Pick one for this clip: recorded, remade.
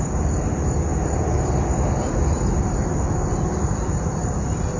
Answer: recorded